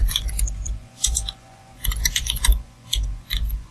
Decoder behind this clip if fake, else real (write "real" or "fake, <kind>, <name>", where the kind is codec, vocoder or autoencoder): fake, vocoder, Vocos